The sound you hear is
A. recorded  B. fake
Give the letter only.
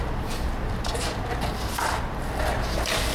A